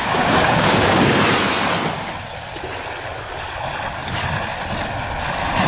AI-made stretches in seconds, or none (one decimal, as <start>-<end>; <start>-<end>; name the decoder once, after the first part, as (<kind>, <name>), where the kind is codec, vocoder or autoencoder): 0.0-1.2 (codec, DAC)